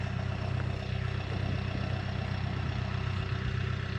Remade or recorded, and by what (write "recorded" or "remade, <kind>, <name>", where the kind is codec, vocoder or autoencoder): recorded